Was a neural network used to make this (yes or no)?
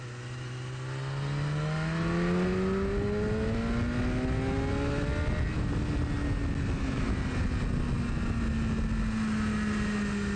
no